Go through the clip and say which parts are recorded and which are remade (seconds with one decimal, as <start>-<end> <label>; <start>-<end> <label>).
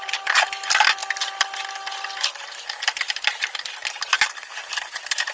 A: 0.0-5.3 recorded